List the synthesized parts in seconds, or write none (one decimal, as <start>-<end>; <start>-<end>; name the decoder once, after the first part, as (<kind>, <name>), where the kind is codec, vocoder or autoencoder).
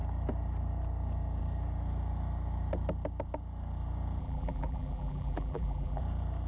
4.2-6.0 (vocoder, BigVGAN v2)